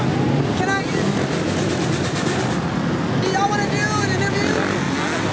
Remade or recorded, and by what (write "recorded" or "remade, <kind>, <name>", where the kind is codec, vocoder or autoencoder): recorded